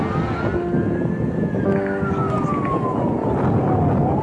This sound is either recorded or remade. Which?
recorded